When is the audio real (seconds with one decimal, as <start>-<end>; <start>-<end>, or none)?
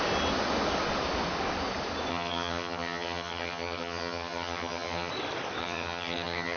0.0-2.1; 5.1-5.6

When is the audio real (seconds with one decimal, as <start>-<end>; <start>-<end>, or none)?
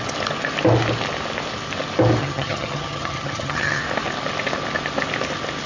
0.0-2.2; 3.8-5.7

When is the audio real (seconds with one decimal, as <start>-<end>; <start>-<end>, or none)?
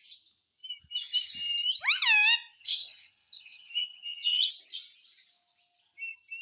0.0-2.6; 4.5-6.4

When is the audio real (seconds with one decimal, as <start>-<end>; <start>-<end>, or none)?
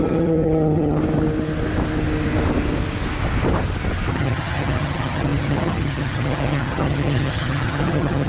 1.0-4.1